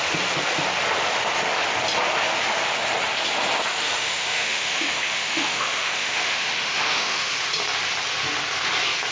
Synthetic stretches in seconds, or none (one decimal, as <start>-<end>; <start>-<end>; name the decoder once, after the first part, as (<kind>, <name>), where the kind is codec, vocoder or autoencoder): 3.7-7.3 (autoencoder, DAC-VAE)